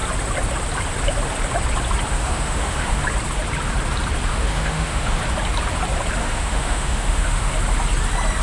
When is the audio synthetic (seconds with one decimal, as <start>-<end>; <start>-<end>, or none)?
2.1-3.0; 4.3-5.2; 6.2-7.5